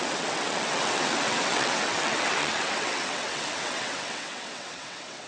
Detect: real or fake fake